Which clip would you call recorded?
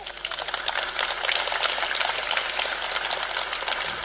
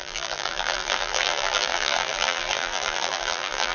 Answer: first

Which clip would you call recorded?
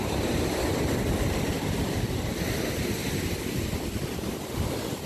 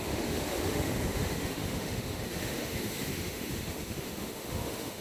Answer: first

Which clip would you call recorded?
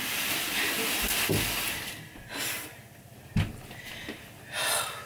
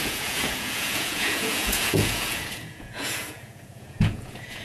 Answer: first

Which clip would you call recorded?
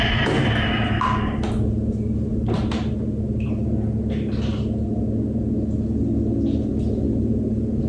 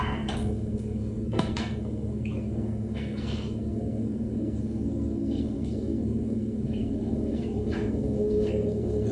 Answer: first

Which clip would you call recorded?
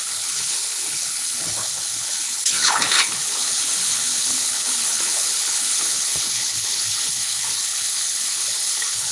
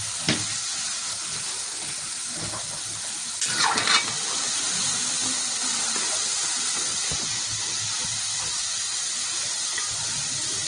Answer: second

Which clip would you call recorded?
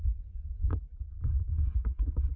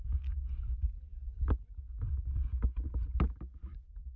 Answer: second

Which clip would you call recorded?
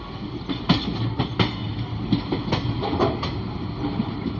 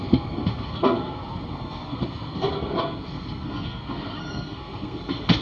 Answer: first